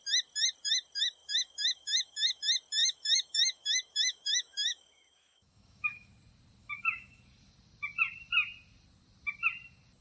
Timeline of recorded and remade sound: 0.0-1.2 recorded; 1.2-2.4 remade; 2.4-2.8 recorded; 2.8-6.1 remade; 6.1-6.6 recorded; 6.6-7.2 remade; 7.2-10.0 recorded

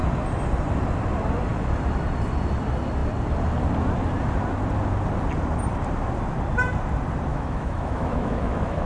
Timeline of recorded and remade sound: 0.0-7.3 recorded; 7.3-8.9 remade

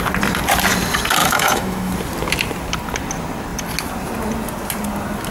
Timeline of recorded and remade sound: 0.0-1.2 recorded; 1.2-1.9 remade; 1.9-5.3 recorded

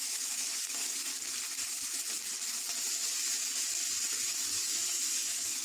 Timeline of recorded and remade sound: 0.0-1.1 remade; 1.1-4.5 recorded; 4.5-5.6 remade

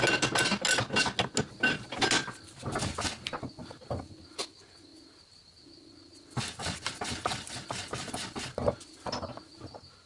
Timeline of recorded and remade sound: 0.0-10.1 recorded

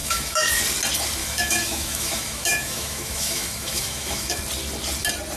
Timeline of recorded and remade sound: 0.0-0.6 remade; 0.6-1.2 recorded; 1.2-4.4 remade; 4.4-5.4 recorded

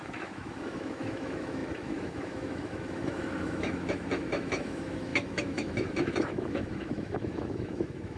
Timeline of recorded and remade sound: 0.0-8.2 remade